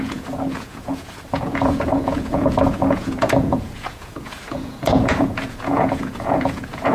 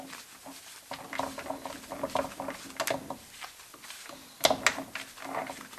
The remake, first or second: first